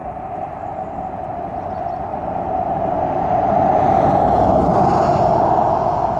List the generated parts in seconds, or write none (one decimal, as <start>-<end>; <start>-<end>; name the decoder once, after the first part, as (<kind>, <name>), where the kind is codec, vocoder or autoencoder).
0.0-1.6 (vocoder, BigVGAN v2); 2.1-5.3